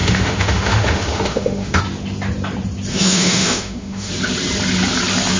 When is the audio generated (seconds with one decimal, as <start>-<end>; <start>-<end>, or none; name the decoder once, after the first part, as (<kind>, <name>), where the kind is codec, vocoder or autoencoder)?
0.0-1.8 (autoencoder, DAC-VAE); 2.9-4.1

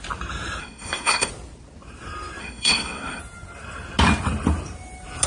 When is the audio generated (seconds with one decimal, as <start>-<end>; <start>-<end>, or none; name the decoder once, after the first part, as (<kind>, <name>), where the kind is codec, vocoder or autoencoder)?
0.6-1.3 (codec, SNAC); 2.4-3.2

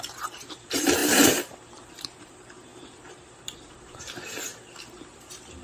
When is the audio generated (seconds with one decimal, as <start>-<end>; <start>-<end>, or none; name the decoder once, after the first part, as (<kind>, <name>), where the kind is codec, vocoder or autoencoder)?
0.0-5.6 (vocoder, BigVGAN v2)

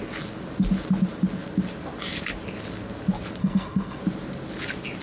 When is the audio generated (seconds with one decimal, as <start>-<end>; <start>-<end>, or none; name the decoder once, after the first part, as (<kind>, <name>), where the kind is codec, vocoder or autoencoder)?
3.4-4.0 (codec, SNAC)

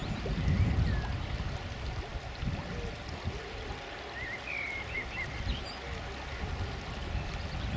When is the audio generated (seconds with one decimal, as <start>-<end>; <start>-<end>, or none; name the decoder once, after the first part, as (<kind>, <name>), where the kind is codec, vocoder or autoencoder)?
none

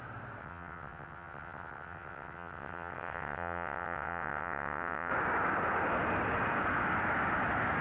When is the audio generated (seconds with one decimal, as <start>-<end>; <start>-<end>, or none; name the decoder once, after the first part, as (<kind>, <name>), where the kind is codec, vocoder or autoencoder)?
0.4-5.1 (vocoder, WaveNeXt)